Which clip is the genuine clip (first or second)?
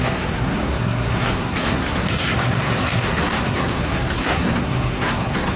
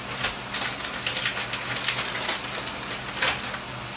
second